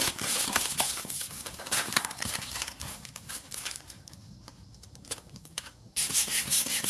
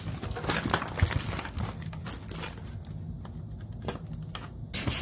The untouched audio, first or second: second